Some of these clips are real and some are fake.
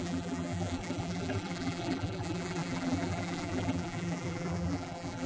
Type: fake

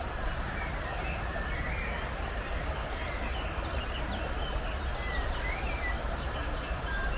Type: real